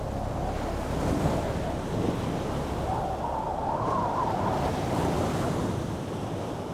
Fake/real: real